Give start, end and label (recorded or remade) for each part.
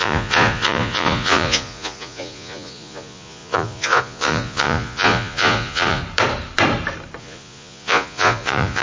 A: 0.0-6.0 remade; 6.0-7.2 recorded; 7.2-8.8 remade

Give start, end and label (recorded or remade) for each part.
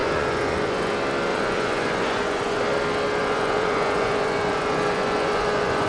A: 0.0-0.9 remade; 0.9-1.3 recorded; 1.3-2.6 remade; 2.6-3.2 recorded; 3.2-5.9 remade